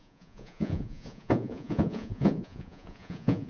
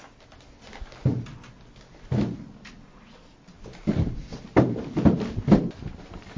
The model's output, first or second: first